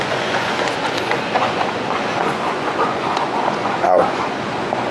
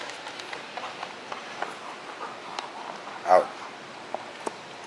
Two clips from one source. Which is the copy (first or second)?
first